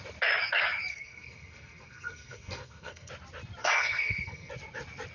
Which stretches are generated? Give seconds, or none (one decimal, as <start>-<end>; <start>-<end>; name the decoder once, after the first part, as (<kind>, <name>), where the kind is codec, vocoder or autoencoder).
0.9-3.1 (codec, SNAC); 3.6-4.5